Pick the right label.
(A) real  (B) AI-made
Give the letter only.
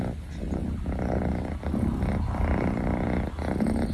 A